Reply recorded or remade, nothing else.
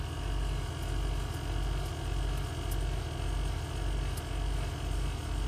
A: recorded